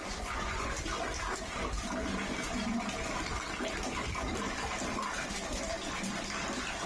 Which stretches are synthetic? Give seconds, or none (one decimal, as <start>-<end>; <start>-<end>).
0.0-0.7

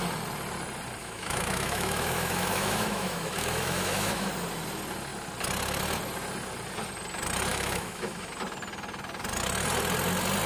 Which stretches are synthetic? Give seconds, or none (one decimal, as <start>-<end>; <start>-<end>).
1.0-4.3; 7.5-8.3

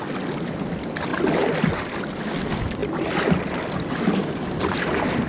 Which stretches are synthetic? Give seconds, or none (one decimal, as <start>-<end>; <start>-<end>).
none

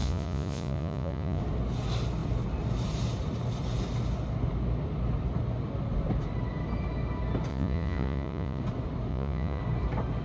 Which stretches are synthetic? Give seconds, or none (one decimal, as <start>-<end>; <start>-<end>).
0.0-1.4; 7.5-8.6; 9.1-9.6

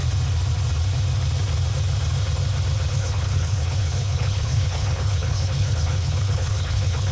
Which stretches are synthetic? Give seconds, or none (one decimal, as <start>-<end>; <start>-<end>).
2.9-7.1